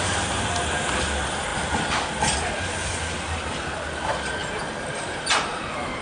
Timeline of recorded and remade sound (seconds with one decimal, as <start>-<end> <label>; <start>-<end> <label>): 0.0-6.0 recorded